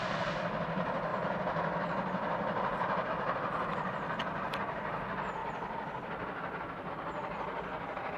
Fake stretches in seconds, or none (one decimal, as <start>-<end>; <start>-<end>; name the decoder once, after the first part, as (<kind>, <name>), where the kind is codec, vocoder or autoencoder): 5.4-6.9 (vocoder, BigVGAN v2)